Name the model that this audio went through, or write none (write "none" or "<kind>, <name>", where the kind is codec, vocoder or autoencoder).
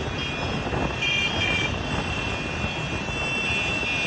none